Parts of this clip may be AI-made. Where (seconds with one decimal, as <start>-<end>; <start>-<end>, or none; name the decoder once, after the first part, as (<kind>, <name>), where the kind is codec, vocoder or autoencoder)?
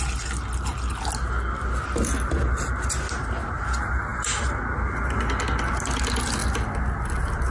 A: none